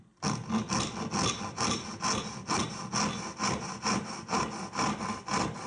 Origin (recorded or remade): recorded